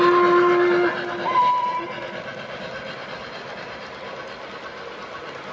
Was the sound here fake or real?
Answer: real